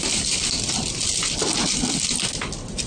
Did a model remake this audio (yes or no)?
no